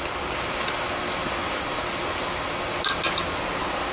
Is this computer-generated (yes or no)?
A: no